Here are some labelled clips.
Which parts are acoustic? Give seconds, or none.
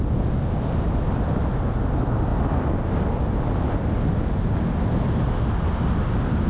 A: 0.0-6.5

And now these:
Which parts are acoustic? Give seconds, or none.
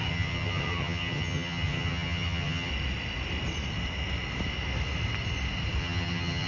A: 2.7-5.8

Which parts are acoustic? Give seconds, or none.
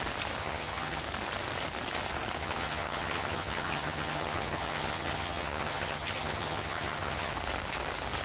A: 0.0-0.4; 1.0-2.4; 7.3-8.2